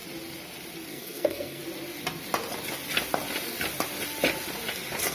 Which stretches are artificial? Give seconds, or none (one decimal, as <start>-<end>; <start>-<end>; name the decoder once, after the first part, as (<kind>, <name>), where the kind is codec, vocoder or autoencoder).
0.9-1.6 (codec, SNAC)